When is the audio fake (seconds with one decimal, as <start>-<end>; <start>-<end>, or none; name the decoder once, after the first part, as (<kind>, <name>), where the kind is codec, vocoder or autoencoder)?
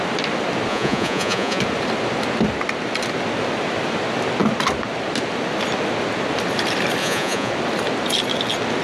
0.7-1.6 (vocoder, Vocos); 7.0-7.5